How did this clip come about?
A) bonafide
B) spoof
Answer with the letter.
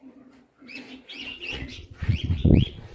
B